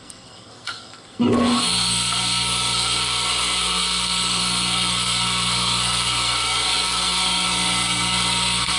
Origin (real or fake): fake